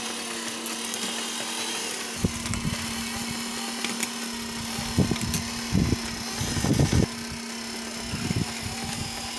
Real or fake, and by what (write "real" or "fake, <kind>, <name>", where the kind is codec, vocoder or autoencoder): real